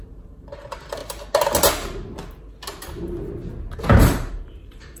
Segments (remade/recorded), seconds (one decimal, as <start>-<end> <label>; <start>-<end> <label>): 0.0-1.0 remade; 1.0-3.6 recorded; 3.6-5.0 remade